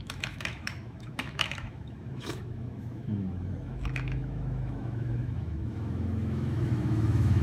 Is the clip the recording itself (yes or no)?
no